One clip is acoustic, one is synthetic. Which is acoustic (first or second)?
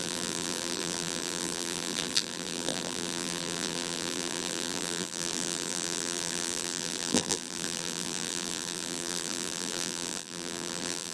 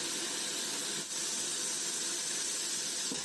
second